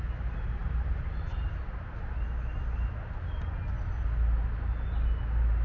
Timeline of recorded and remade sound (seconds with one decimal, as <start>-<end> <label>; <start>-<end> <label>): 0.0-5.6 recorded